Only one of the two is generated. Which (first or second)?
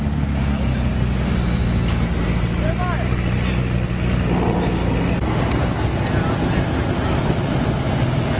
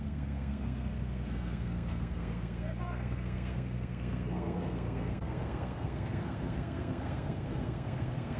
second